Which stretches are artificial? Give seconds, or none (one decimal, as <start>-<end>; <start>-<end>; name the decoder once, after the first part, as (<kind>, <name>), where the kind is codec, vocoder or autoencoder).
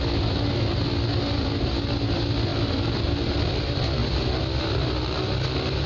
none